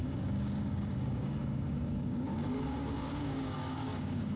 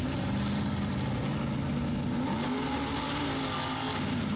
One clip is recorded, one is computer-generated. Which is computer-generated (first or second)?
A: first